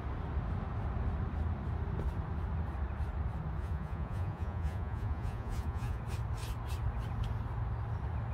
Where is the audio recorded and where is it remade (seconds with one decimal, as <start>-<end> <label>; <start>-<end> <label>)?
0.0-3.6 recorded; 3.6-6.0 remade; 6.0-8.3 recorded